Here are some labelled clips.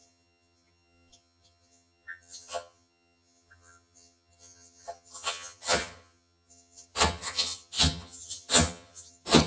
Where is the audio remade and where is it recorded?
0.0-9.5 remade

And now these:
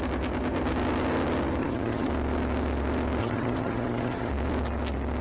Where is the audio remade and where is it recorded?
0.0-1.6 recorded; 1.6-2.1 remade; 2.1-3.2 recorded; 3.2-4.3 remade; 4.3-5.2 recorded

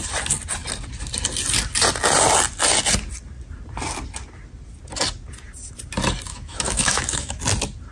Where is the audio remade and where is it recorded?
0.0-6.3 recorded; 6.3-7.4 remade; 7.4-7.9 recorded

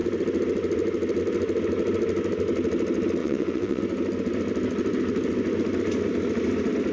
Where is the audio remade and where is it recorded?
0.0-3.2 recorded; 3.2-3.8 remade; 3.8-6.9 recorded

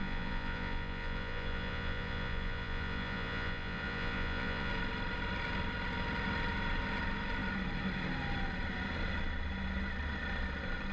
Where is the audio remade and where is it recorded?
0.0-4.7 remade; 4.7-10.9 recorded

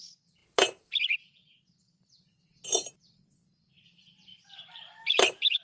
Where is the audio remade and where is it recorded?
0.0-4.3 recorded; 4.3-5.6 remade

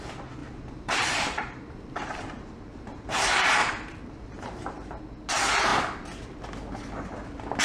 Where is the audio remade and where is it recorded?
0.0-0.4 recorded; 0.4-5.0 remade; 5.0-7.6 recorded

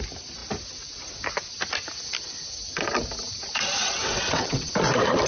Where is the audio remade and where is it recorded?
0.0-4.0 recorded; 4.0-4.7 remade; 4.7-5.3 recorded